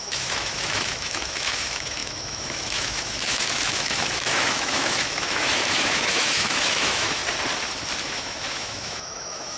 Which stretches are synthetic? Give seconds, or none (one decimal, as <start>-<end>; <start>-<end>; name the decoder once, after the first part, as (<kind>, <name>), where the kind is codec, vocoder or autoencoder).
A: 0.0-7.2 (autoencoder, DAC-VAE); 8.0-9.6